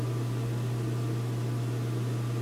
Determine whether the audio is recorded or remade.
recorded